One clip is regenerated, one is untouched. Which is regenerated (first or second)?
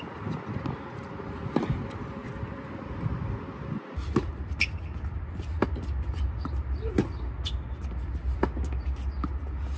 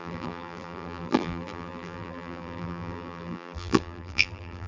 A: second